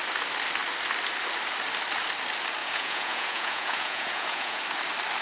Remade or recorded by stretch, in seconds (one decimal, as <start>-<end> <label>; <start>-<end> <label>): 0.0-2.6 recorded; 2.6-4.6 remade; 4.6-5.2 recorded